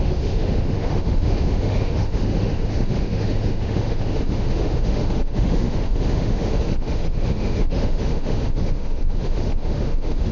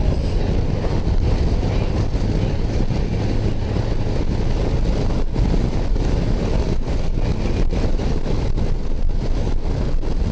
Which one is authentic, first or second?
second